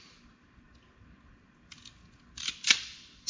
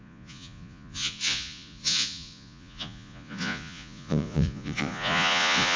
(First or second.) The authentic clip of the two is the first